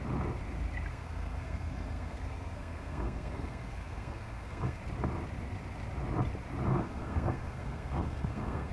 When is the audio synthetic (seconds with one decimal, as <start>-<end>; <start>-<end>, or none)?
0.9-4.8; 6.7-8.7